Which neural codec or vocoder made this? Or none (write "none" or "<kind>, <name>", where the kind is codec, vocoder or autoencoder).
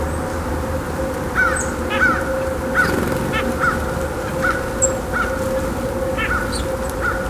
none